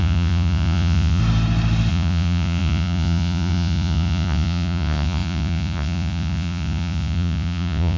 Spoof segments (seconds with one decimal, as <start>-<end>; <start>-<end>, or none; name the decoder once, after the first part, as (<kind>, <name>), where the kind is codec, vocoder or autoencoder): 0.0-1.2 (vocoder, Vocos); 1.9-8.0